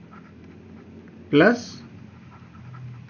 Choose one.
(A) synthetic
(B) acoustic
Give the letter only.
B